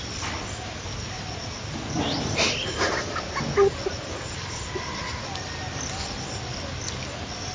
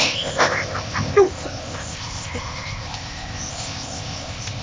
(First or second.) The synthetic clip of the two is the second